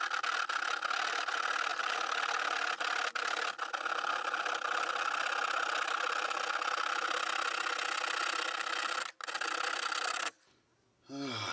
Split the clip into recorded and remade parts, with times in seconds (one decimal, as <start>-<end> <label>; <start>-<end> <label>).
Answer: 0.0-11.5 recorded